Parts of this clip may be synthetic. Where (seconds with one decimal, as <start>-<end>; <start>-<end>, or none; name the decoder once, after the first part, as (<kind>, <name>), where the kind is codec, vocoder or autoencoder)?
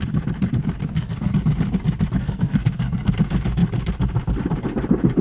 0.8-1.3 (codec, SNAC); 2.2-3.1